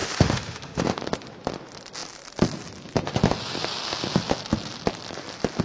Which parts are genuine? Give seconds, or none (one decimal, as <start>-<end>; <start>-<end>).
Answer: 1.0-5.6